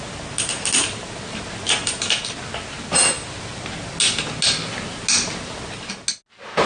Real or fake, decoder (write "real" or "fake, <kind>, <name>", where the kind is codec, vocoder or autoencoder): real